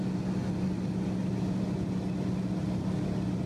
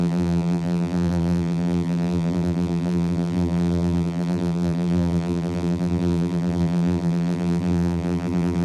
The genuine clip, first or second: first